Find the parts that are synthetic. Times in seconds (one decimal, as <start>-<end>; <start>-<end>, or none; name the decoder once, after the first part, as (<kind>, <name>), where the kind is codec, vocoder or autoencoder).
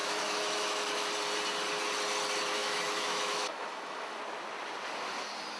0.0-1.1 (autoencoder, DAC-VAE); 2.6-4.2